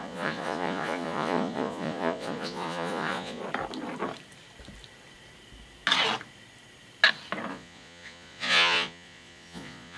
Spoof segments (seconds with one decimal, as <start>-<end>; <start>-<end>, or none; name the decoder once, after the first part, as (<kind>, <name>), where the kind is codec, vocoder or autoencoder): 0.0-3.4 (vocoder, Vocos); 7.5-10.0